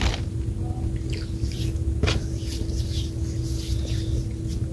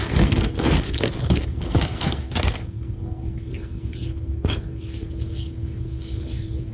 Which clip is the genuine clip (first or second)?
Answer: first